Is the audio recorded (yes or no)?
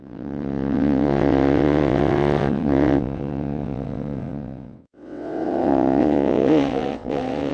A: no